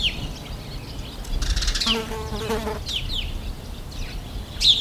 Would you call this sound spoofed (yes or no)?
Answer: no